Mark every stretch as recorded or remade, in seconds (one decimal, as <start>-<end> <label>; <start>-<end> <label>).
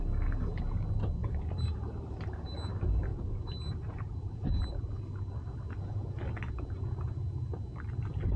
0.0-1.2 recorded; 1.2-2.5 remade; 2.5-3.1 recorded; 3.1-4.9 remade; 4.9-8.4 recorded